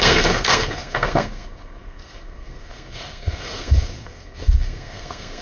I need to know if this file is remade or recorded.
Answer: remade